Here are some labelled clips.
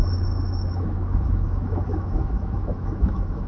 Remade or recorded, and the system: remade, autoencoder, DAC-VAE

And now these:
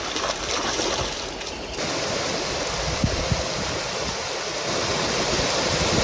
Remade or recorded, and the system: recorded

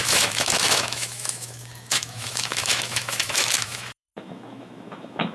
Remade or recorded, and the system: remade, autoencoder, DAC-VAE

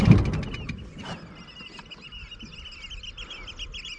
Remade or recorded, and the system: recorded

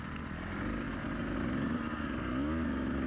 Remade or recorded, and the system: recorded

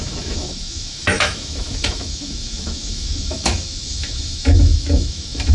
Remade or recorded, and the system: remade, autoencoder, DAC-VAE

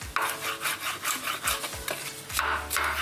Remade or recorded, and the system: recorded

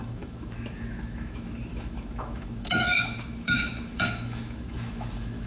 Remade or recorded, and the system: remade, autoencoder, DAC-VAE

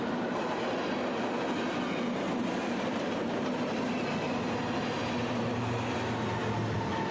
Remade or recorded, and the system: recorded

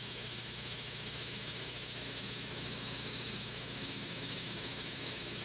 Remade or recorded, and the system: remade, autoencoder, DAC-VAE